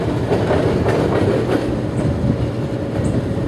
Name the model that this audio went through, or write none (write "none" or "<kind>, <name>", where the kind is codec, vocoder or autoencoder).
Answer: none